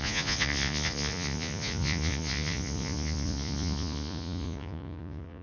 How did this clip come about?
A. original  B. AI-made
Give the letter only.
B